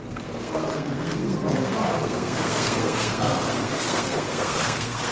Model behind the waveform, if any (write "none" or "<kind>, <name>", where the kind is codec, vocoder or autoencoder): codec, SNAC